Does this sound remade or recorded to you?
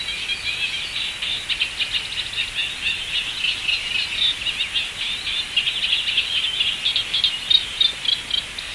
recorded